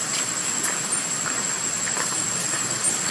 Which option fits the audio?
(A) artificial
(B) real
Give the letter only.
B